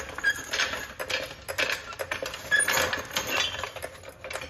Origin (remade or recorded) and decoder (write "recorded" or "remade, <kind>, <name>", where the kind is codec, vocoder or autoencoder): recorded